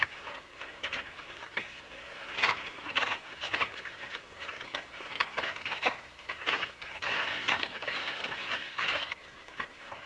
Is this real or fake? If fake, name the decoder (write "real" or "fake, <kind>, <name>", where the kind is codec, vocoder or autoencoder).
fake, codec, SNAC